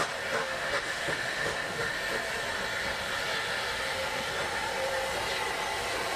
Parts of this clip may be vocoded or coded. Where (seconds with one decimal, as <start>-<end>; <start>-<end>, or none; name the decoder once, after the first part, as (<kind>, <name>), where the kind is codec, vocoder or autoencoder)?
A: 0.4-2.0 (autoencoder, DAC-VAE)